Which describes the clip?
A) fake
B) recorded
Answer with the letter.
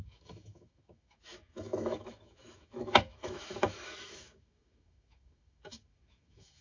A